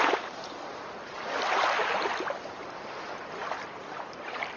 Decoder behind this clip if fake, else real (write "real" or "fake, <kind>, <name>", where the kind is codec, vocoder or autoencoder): fake, vocoder, BigVGAN v2